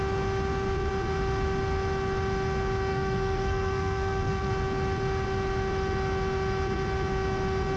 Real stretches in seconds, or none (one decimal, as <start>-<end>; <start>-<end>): 0.0-2.9; 4.5-7.8